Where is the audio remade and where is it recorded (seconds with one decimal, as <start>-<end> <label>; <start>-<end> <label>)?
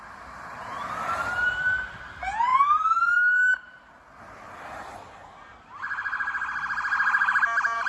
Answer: 0.0-7.9 recorded